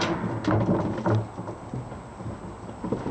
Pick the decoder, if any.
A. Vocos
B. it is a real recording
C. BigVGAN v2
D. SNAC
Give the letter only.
B